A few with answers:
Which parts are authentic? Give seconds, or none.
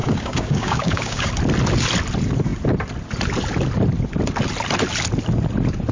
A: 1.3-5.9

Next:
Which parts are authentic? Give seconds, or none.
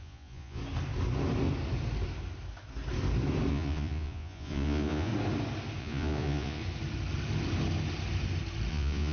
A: 0.6-3.5; 5.1-5.8; 6.6-8.7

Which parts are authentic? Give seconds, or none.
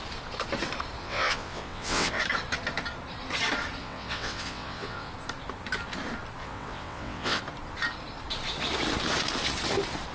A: 0.0-1.0; 2.2-3.8; 5.1-6.4; 7.4-10.1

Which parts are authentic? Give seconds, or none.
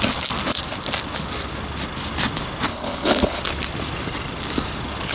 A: 0.0-2.7; 3.4-5.1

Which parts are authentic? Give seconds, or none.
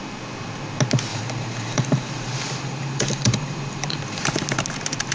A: 0.0-1.1; 4.2-5.1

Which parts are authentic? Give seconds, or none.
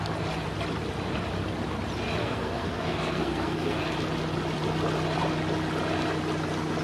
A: 0.0-2.2; 3.8-6.8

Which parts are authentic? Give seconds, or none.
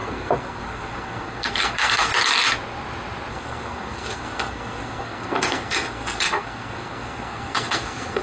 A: 2.1-3.3